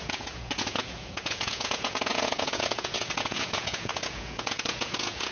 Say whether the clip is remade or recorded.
remade